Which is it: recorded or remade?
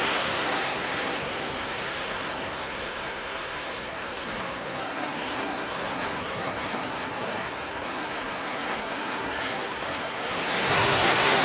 remade